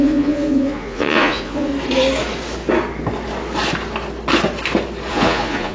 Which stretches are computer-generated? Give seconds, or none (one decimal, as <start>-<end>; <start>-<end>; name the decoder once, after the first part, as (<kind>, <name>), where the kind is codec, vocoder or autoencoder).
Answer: 0.0-1.7 (vocoder, Vocos); 5.1-5.7